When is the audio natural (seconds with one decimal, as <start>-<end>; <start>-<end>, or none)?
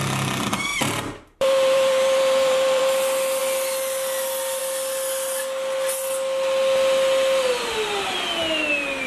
0.0-0.7; 2.8-9.1